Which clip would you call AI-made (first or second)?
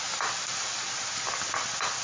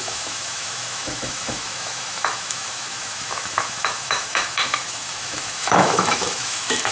second